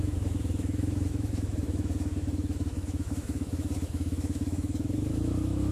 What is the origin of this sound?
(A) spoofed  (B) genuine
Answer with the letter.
A